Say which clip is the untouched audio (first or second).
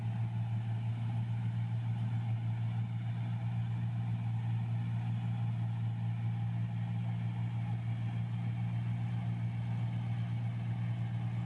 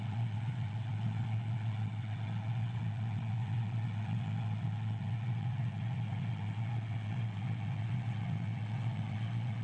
first